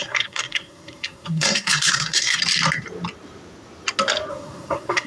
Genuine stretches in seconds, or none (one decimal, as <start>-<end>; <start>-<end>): 2.4-4.3